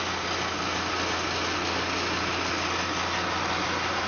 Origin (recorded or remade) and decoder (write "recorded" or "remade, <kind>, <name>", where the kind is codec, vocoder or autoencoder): recorded